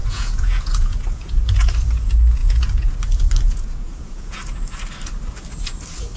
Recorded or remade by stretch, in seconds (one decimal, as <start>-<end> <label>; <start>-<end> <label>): 0.0-1.7 remade; 1.7-2.4 recorded; 2.4-2.9 remade; 2.9-3.5 recorded; 3.5-4.4 remade; 4.4-6.2 recorded